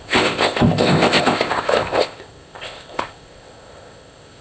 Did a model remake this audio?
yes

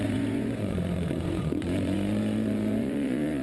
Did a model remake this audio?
yes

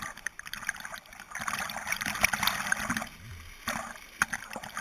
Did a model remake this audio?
no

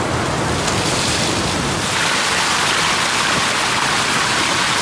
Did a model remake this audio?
no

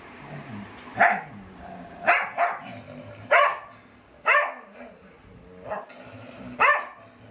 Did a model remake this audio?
no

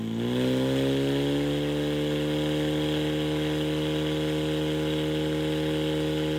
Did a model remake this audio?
no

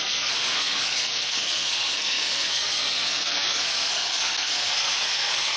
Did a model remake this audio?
yes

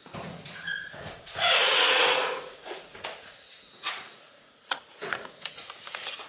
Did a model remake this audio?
yes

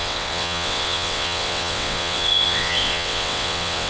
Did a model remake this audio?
yes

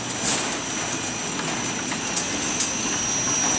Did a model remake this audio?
no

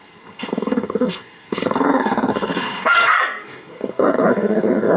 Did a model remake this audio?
yes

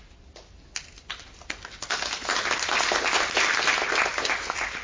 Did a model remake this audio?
no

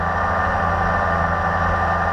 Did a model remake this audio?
no